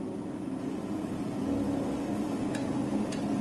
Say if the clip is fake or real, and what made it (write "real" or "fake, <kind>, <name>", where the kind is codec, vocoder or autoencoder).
real